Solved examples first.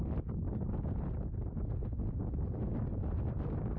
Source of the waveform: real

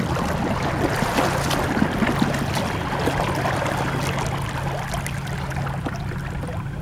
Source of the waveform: real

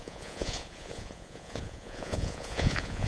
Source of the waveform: fake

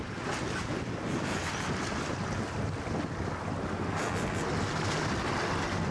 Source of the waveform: real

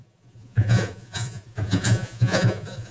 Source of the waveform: fake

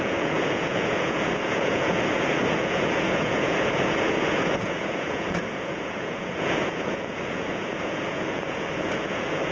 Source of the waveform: fake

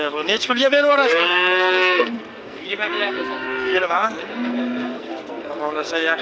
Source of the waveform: fake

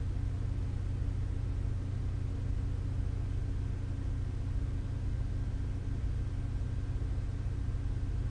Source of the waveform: real